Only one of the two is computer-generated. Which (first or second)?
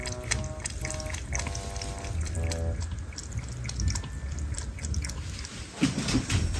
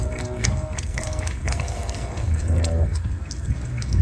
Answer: second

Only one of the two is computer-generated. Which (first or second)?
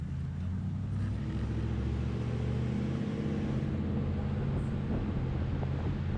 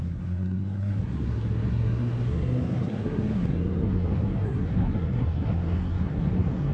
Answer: second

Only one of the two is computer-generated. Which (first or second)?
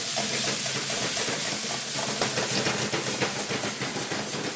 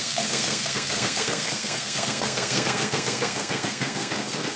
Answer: second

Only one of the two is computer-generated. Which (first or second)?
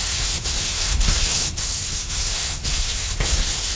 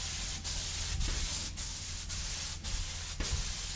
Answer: first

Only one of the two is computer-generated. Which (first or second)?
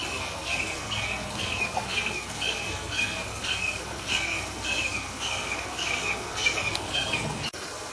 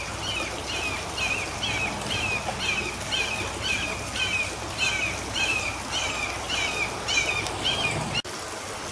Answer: first